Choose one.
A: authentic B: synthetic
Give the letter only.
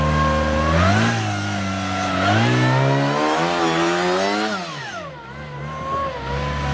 A